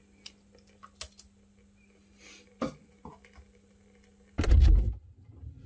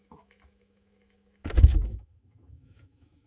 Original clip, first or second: first